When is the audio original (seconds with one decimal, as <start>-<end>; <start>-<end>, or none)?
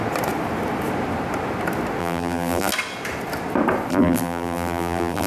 0.0-2.0; 2.7-3.9